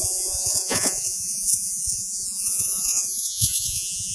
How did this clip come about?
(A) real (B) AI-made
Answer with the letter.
B